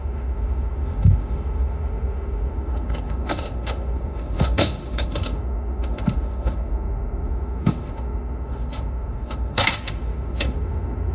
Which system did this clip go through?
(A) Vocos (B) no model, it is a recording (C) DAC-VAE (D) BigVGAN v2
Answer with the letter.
C